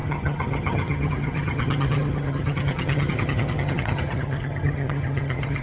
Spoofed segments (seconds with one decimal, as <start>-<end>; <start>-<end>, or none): 0.0-5.6